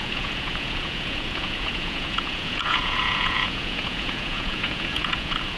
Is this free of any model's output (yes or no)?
no